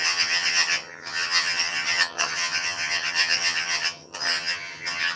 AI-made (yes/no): yes